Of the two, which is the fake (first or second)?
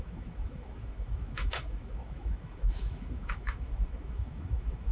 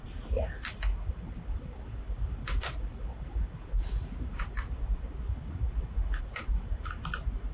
first